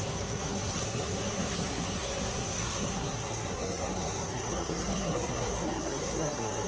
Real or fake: fake